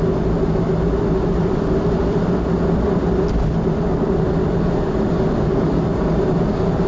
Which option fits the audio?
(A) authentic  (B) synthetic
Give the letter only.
A